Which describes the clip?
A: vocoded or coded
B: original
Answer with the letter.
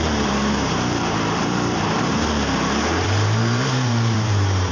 A